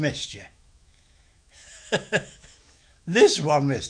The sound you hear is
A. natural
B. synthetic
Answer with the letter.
B